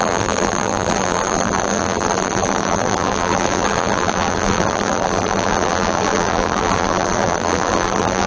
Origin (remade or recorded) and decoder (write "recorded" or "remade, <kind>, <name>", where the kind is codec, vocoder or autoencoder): remade, vocoder, BigVGAN v2